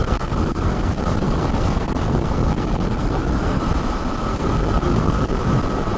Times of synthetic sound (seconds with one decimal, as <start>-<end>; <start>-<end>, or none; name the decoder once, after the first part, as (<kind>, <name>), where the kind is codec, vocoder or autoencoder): 0.0-3.6 (codec, SNAC); 4.3-5.4